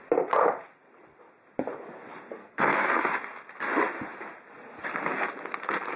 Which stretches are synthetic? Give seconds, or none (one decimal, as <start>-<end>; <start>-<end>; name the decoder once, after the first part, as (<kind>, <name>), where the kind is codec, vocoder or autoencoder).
2.4-3.0 (codec, SNAC)